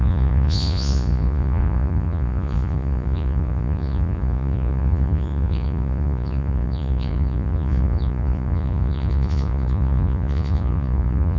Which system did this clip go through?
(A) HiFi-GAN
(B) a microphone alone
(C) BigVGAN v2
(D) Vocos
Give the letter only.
D